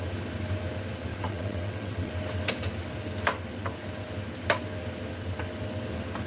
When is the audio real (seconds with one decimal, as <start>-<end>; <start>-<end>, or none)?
0.0-1.1; 2.1-6.3